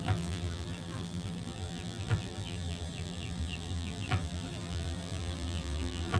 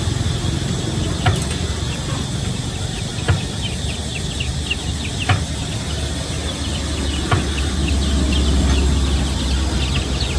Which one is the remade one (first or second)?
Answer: first